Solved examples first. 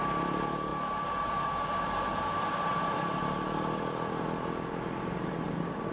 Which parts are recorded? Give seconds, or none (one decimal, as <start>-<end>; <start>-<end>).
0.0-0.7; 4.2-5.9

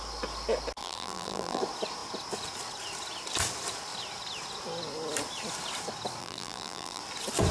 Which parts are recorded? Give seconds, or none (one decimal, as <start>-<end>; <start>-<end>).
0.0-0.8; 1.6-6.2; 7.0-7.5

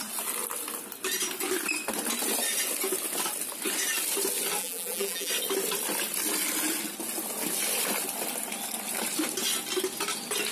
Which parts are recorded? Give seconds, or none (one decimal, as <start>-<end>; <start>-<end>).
0.0-4.6; 5.3-10.5